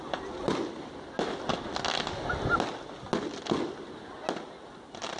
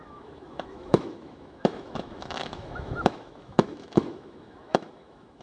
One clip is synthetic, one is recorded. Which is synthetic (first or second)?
second